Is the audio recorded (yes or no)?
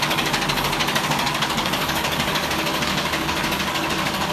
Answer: no